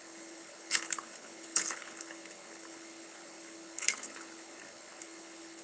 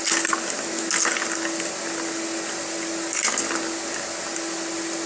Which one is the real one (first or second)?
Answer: second